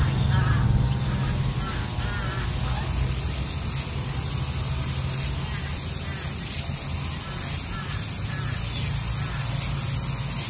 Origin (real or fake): real